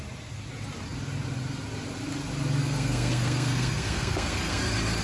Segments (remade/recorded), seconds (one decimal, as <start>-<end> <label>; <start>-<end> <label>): 0.0-2.6 recorded; 2.6-4.6 remade; 4.6-5.0 recorded

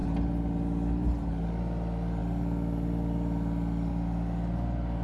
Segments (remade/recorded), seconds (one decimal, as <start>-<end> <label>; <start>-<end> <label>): 0.0-5.0 recorded

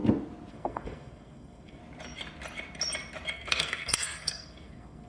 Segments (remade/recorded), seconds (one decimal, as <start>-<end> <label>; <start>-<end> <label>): 0.0-0.5 recorded; 0.5-1.8 remade; 1.8-3.3 recorded; 3.3-5.1 remade

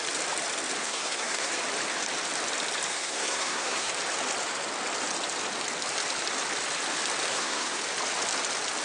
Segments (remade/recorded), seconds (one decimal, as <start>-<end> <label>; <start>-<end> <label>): 0.0-0.8 recorded; 0.8-1.5 remade; 1.5-2.9 recorded; 2.9-3.9 remade; 3.9-7.3 recorded; 7.3-7.8 remade; 7.8-8.8 recorded

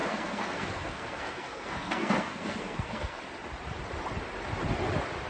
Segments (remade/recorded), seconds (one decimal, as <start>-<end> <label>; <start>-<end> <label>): 0.0-3.2 remade; 3.2-5.3 recorded